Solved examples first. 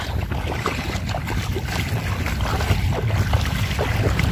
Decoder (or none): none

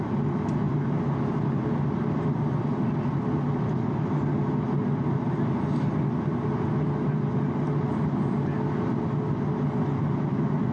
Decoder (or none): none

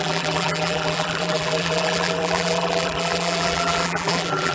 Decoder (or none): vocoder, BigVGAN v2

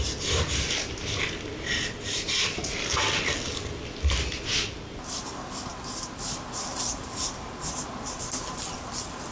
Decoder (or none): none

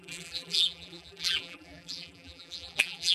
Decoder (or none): vocoder, BigVGAN v2